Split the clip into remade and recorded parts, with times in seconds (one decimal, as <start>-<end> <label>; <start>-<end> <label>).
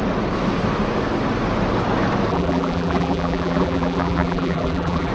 0.0-2.3 recorded; 2.3-5.1 remade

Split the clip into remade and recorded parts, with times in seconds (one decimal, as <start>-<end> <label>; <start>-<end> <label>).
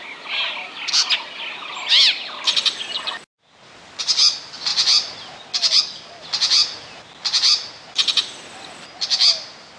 0.0-9.8 recorded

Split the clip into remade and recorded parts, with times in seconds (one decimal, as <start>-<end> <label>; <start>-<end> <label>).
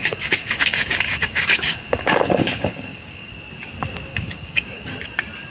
0.0-3.3 remade; 3.3-4.1 recorded; 4.1-4.9 remade; 4.9-5.5 recorded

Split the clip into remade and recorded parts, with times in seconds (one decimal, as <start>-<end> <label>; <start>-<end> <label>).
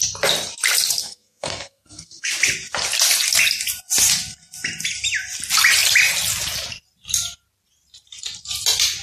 0.0-1.0 recorded; 1.0-2.3 remade; 2.3-9.0 recorded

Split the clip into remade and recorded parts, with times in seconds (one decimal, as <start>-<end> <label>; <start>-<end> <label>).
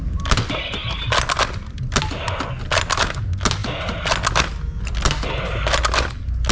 0.0-6.5 recorded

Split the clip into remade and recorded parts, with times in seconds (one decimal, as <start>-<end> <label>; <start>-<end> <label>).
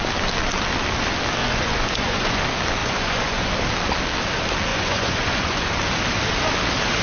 0.0-1.4 recorded; 1.4-2.4 remade; 2.4-2.8 recorded; 2.8-3.5 remade; 3.5-4.7 recorded; 4.7-5.7 remade; 5.7-7.0 recorded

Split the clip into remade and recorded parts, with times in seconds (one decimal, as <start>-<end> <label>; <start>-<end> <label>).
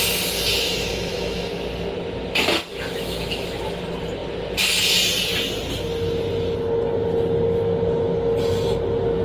0.0-0.7 recorded; 0.7-1.5 remade; 1.5-2.7 recorded; 2.7-3.8 remade; 3.8-9.2 recorded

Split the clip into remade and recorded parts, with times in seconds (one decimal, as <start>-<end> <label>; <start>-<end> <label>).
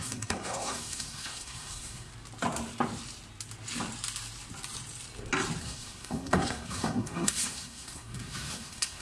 0.0-2.1 remade; 2.1-5.6 recorded; 5.6-9.0 remade